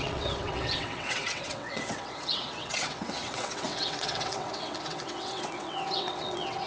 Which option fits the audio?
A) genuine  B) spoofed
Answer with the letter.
B